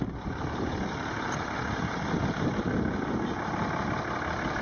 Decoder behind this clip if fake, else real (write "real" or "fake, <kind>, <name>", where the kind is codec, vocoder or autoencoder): real